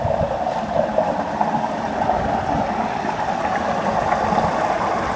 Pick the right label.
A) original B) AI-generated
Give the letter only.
A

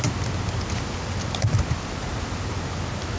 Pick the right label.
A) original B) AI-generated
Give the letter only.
A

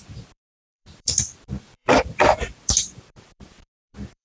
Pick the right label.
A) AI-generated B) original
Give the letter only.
A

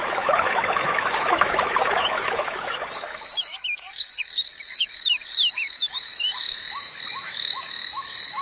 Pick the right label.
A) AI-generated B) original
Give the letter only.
A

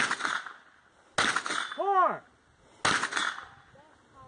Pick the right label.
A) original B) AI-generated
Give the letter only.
A